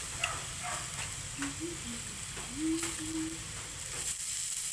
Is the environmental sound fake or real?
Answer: real